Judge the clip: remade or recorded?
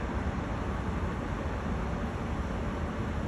recorded